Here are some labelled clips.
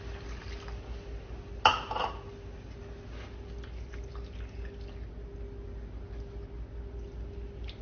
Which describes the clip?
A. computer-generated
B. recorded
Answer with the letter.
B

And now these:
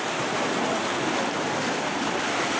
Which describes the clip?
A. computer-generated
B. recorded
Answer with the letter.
B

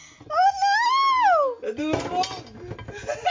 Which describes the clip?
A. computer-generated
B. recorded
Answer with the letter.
B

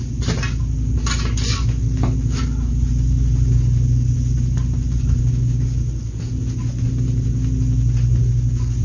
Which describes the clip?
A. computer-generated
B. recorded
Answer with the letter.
B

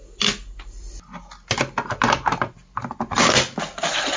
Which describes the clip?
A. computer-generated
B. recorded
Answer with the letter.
B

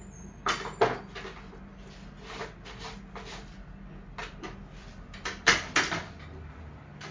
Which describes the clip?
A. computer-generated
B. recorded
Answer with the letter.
B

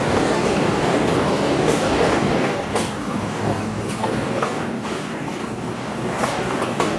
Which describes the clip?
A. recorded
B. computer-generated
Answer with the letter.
B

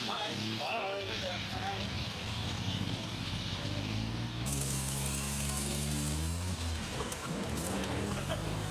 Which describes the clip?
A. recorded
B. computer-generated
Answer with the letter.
B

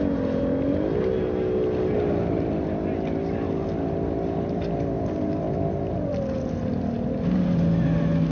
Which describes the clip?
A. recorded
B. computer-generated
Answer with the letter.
A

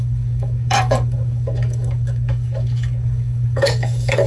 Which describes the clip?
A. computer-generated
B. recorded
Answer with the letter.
A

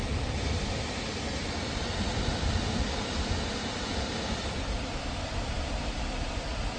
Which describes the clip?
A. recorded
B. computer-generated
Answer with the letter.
A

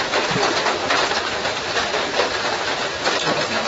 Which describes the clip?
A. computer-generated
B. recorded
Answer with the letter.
B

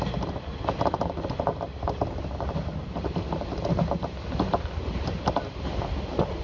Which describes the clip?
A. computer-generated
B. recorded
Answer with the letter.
B